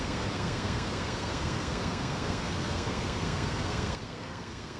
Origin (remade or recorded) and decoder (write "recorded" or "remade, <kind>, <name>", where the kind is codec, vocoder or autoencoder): remade, codec, SNAC